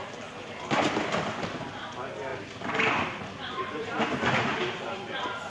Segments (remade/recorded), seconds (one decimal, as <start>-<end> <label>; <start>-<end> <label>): 0.0-5.5 recorded